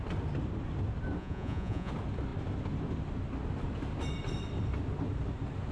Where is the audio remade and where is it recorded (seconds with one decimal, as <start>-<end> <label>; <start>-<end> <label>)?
0.0-1.2 recorded; 1.2-1.9 remade; 1.9-5.7 recorded